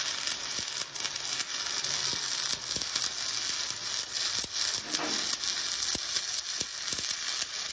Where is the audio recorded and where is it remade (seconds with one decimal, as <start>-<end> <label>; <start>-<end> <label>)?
0.0-7.7 recorded